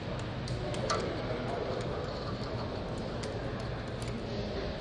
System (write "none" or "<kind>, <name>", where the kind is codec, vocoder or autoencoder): none